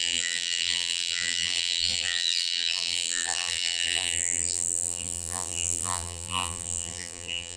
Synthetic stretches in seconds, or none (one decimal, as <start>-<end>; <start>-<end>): 0.0-7.6